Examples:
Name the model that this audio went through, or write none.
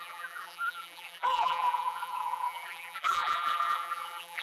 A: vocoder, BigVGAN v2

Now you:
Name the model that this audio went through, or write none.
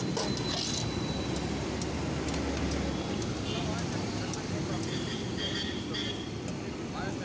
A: none